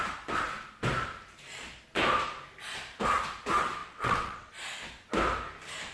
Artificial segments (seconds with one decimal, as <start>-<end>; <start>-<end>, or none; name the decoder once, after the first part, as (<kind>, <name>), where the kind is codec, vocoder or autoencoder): 3.8-4.5 (vocoder, WaveNeXt)